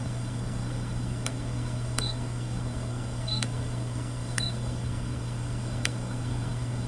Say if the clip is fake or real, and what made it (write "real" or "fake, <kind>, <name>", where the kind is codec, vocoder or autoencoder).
fake, codec, SNAC